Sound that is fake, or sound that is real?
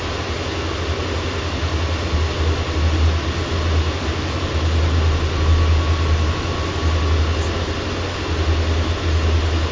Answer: real